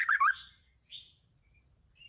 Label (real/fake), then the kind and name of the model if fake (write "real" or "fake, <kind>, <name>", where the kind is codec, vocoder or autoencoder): fake, vocoder, BigVGAN v2